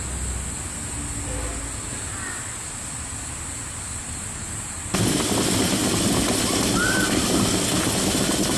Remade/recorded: recorded